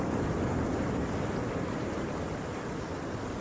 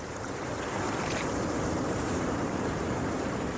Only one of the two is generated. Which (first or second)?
second